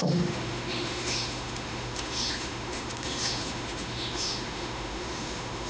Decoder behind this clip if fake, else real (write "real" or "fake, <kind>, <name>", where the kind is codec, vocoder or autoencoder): fake, autoencoder, DAC-VAE